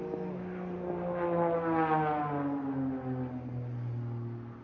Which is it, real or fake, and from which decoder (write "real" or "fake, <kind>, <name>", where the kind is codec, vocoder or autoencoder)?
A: real